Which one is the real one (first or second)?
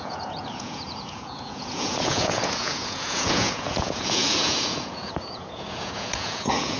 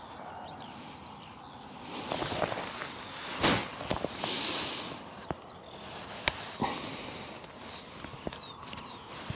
second